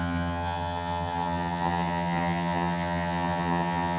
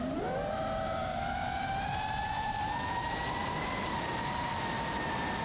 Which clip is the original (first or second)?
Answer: second